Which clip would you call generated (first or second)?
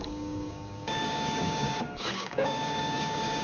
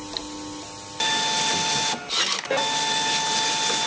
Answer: first